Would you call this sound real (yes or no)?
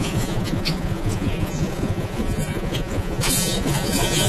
no